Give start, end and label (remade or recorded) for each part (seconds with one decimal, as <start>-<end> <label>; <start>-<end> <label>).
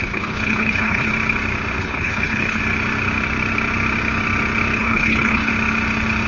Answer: 0.0-1.1 remade; 1.1-1.8 recorded; 1.8-2.6 remade; 2.6-4.8 recorded; 4.8-5.5 remade; 5.5-6.3 recorded